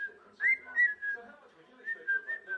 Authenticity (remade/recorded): recorded